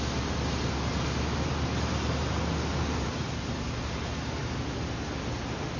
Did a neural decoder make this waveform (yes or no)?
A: no